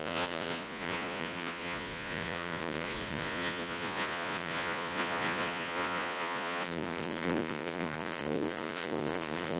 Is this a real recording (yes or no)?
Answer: no